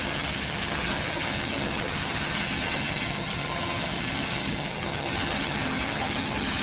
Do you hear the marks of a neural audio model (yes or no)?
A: yes